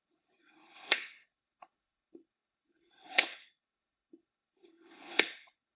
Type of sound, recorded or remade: remade